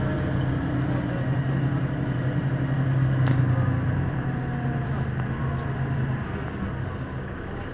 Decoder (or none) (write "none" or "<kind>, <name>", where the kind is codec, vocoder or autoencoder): none